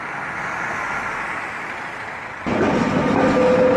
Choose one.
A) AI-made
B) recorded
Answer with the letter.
B